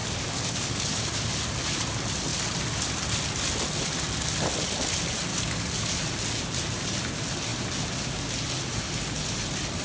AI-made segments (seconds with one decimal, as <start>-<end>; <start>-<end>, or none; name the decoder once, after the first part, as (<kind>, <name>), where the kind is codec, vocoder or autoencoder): 0.0-1.3 (codec, DAC); 5.3-6.0